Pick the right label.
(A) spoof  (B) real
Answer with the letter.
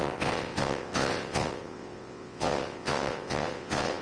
A